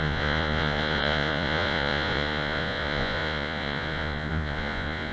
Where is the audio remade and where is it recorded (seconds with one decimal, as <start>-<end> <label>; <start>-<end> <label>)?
0.0-5.1 remade